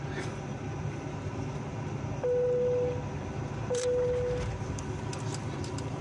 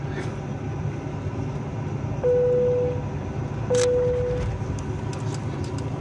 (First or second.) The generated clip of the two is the first